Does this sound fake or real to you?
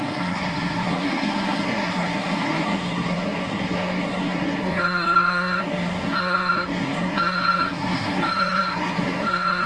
fake